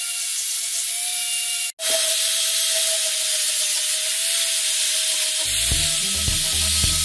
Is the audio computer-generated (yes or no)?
no